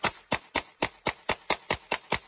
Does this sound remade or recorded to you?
recorded